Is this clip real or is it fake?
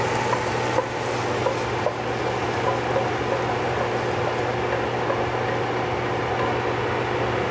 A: real